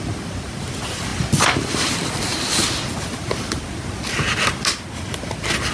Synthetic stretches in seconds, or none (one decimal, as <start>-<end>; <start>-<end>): none